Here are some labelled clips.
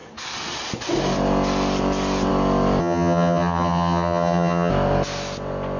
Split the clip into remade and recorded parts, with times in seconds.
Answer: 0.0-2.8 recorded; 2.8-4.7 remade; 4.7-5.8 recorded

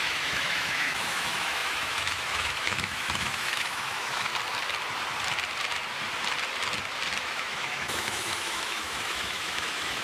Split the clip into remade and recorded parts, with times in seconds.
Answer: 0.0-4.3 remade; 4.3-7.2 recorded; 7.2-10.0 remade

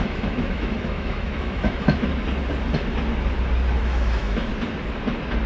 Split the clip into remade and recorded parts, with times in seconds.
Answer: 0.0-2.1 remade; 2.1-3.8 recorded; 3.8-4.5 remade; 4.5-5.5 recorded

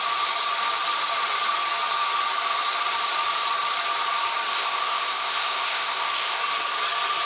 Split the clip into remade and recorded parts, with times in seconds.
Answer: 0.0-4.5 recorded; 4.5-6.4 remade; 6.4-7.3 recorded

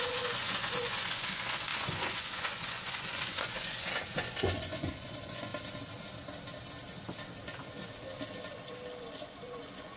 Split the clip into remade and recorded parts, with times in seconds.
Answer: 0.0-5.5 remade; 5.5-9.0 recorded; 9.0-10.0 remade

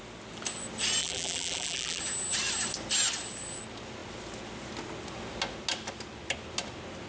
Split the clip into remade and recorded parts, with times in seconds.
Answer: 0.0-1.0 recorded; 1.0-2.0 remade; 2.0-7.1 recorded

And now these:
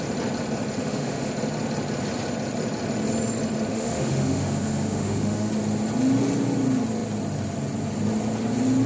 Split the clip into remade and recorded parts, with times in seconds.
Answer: 0.0-0.8 recorded; 0.8-1.3 remade; 1.3-3.7 recorded; 3.7-5.5 remade; 5.5-8.9 recorded